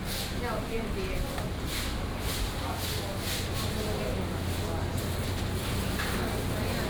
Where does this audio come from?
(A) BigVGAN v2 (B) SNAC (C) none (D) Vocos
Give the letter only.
C